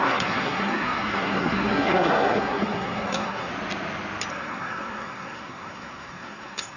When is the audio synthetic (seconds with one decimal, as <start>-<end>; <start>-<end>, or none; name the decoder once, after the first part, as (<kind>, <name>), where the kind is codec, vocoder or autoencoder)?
0.0-3.5 (codec, SNAC); 4.3-6.8